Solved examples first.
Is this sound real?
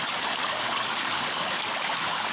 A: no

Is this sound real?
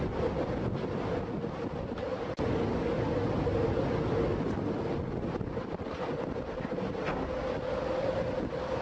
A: yes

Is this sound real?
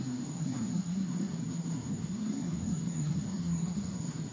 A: no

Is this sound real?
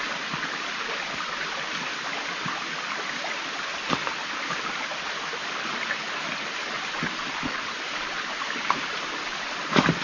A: yes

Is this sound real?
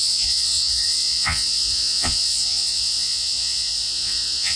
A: no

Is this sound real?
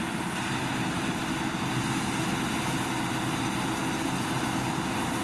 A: yes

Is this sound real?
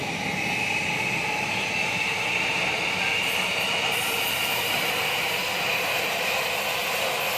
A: yes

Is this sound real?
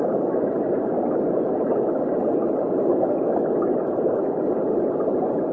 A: no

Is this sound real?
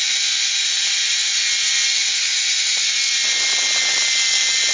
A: yes